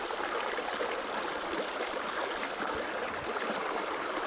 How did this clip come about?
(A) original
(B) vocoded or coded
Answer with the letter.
A